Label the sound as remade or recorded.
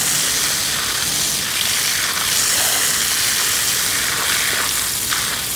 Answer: recorded